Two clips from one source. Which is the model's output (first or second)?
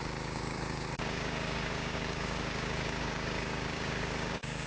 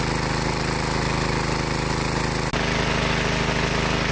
first